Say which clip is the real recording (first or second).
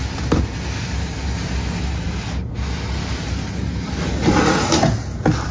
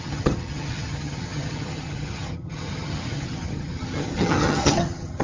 first